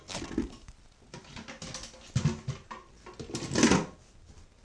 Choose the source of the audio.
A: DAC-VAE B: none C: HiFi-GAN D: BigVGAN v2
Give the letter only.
B